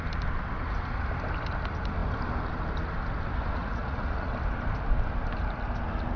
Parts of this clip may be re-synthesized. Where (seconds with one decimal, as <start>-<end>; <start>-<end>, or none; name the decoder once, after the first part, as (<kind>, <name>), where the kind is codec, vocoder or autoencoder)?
3.6-4.3 (vocoder, Vocos)